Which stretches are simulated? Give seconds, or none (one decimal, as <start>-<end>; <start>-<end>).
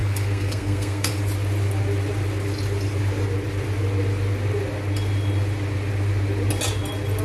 0.0-1.1